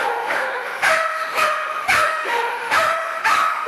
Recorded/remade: remade